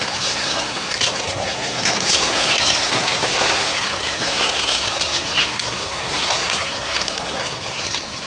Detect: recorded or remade remade